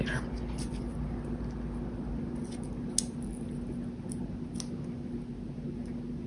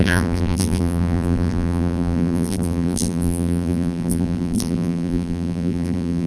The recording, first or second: first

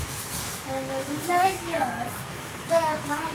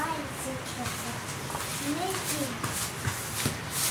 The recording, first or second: second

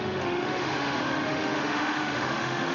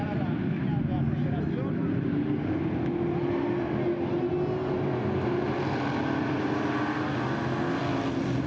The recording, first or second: second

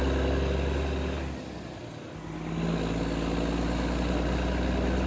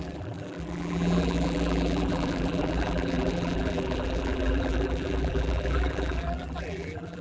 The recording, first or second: first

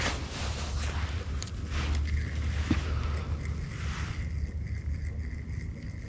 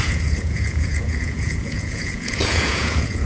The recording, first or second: first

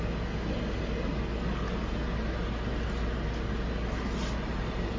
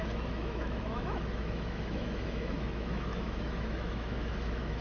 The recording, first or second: first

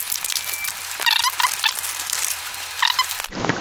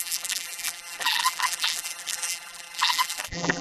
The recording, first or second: first